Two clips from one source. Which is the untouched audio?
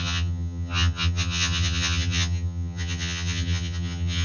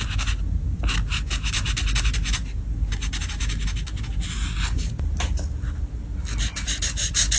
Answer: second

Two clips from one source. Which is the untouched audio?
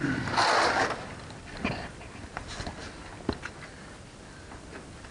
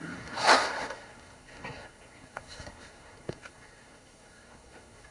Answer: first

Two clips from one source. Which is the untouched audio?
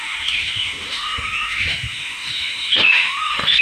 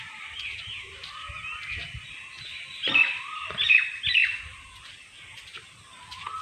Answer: second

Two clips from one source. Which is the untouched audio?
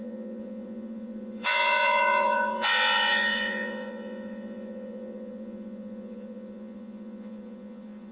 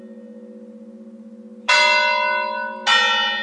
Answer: second